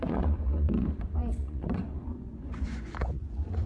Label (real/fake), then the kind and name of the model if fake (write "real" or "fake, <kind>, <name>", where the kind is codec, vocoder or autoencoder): fake, vocoder, Vocos